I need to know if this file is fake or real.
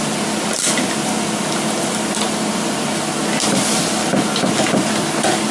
real